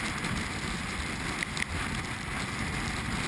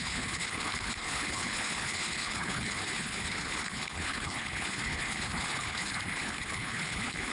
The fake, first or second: second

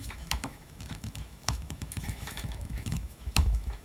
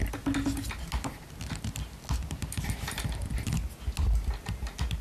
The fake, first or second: first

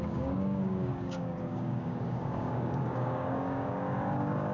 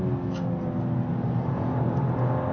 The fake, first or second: first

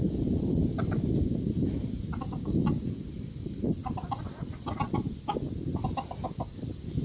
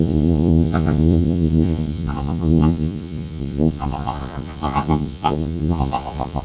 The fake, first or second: second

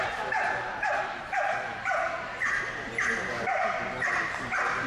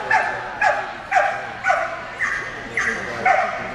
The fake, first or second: first